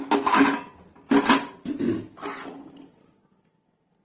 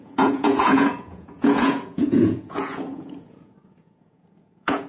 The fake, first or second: second